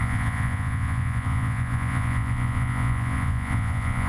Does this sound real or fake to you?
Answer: fake